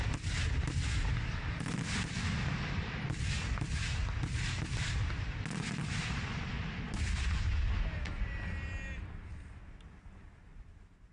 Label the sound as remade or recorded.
recorded